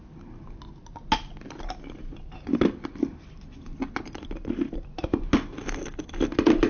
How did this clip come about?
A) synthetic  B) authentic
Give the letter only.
B